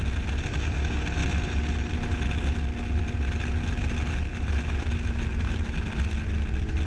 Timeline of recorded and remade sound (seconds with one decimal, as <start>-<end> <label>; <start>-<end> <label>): 0.0-6.9 recorded

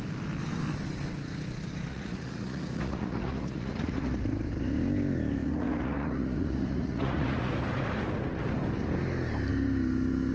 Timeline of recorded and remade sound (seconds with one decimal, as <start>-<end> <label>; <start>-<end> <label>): 0.0-1.9 recorded; 1.9-4.2 remade; 4.2-5.4 recorded; 5.4-7.5 remade; 7.5-10.3 recorded

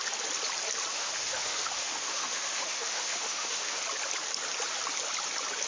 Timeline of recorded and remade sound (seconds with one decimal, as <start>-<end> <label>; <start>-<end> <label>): 0.0-0.9 recorded; 0.9-3.8 remade; 3.8-5.7 recorded

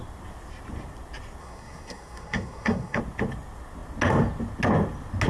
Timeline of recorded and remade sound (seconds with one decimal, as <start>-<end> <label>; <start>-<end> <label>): 0.0-1.4 recorded; 1.4-3.0 remade; 3.0-5.3 recorded

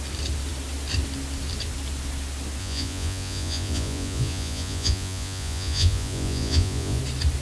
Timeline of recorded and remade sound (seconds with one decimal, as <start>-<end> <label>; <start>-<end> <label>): 0.0-2.6 recorded; 2.6-7.0 remade; 7.0-7.4 recorded